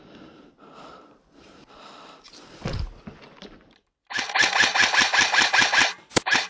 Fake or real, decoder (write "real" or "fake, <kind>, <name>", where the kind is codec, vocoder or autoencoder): real